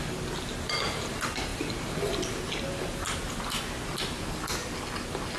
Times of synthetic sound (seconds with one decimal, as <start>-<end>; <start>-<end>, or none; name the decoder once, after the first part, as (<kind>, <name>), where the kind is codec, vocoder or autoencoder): none